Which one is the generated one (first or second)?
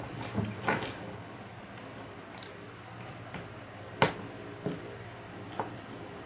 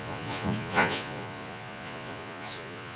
second